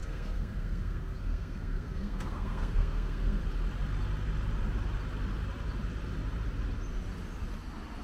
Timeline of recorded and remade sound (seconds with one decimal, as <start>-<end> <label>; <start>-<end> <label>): 0.0-3.4 remade; 3.4-8.0 recorded